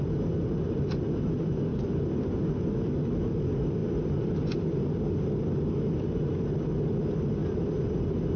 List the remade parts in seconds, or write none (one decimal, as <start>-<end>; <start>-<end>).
none